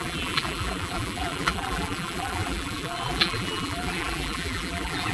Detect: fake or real fake